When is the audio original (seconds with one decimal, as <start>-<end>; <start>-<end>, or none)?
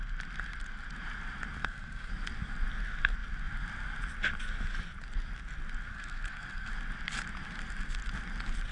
0.0-1.6; 2.1-5.9; 6.7-8.7